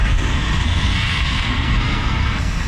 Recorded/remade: remade